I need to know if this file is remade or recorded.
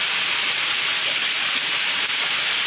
recorded